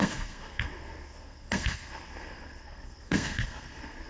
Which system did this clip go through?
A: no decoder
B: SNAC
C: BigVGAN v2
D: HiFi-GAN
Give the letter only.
B